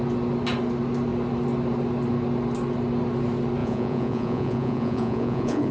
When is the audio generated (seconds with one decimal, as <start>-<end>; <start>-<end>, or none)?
3.6-5.7